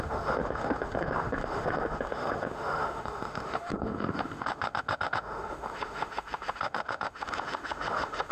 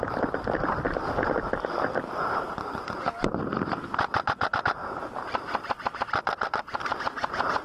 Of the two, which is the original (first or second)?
second